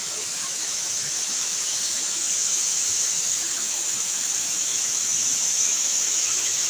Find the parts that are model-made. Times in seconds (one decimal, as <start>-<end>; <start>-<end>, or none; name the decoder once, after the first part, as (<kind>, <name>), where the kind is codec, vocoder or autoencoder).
0.0-6.7 (autoencoder, DAC-VAE)

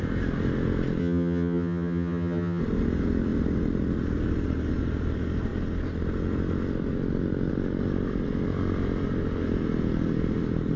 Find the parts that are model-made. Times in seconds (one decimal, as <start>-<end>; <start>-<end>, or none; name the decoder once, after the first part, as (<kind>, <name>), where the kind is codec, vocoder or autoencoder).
1.0-2.6 (vocoder, HiFi-GAN)